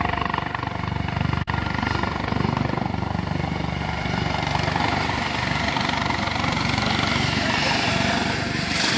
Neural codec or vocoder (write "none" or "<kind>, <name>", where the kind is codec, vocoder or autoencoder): vocoder, BigVGAN v2